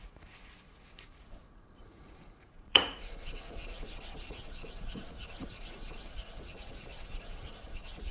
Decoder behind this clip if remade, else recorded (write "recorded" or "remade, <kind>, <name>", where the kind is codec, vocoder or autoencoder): remade, vocoder, Vocos